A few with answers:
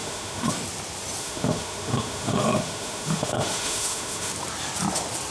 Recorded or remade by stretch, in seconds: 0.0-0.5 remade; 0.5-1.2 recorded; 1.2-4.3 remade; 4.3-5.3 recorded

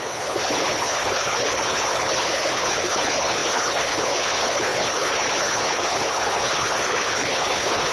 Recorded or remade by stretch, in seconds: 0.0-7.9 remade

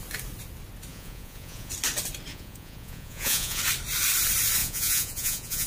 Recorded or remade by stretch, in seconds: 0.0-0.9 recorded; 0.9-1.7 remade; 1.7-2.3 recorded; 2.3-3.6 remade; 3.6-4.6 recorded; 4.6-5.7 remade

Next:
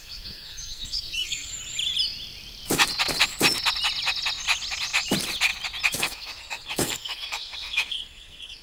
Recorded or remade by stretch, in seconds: 0.0-1.5 remade; 1.5-6.0 recorded; 6.0-8.6 remade